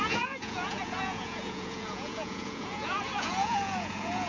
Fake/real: fake